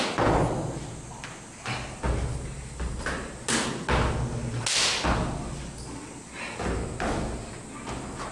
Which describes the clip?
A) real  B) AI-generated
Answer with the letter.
A